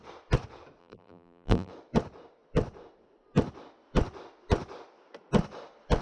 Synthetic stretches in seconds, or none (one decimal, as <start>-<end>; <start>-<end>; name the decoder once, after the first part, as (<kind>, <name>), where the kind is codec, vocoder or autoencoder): 0.8-1.7 (vocoder, BigVGAN v2)